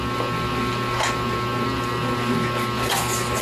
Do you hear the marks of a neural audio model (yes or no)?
no